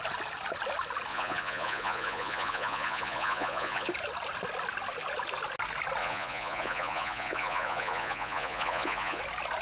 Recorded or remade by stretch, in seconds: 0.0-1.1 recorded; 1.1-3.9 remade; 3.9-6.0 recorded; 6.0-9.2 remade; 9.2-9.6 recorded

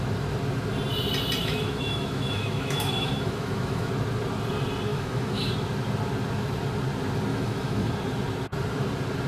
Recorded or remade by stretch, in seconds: 0.0-1.4 recorded; 1.4-3.9 remade; 3.9-4.9 recorded; 4.9-5.5 remade; 5.5-7.3 recorded; 7.3-7.9 remade; 7.9-9.3 recorded

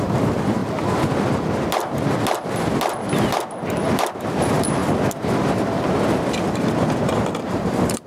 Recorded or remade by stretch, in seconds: 0.0-0.6 remade; 0.6-4.3 recorded; 4.3-4.8 remade; 4.8-7.4 recorded; 7.4-8.1 remade